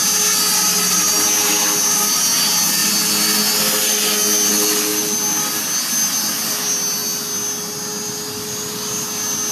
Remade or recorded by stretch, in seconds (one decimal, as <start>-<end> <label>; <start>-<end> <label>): 0.0-9.5 recorded